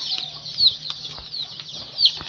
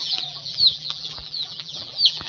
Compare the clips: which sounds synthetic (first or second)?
second